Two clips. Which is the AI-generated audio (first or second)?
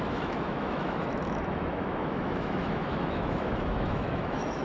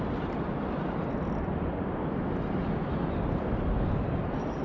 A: first